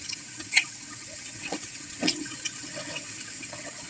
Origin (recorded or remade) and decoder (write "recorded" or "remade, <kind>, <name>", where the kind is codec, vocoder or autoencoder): remade, vocoder, WaveNeXt